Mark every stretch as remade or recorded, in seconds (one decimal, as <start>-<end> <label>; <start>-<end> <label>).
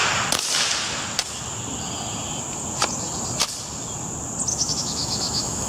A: 0.0-4.5 recorded; 4.5-5.7 remade